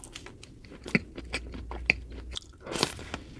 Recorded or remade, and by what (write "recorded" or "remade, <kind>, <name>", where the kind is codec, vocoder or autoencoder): recorded